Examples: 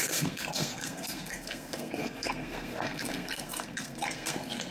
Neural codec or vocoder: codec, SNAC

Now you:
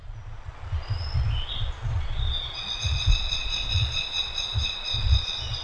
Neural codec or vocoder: vocoder, Vocos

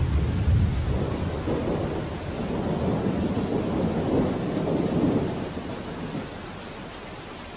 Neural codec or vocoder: none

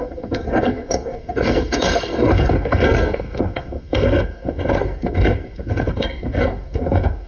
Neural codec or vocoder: codec, SNAC